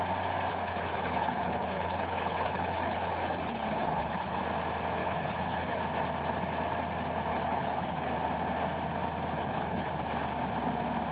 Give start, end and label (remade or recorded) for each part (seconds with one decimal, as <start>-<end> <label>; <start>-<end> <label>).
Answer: 0.0-0.5 recorded; 0.5-4.4 remade; 4.4-5.0 recorded; 5.0-5.8 remade; 5.8-7.3 recorded; 7.3-8.1 remade; 8.1-9.4 recorded; 9.4-9.9 remade; 9.9-11.1 recorded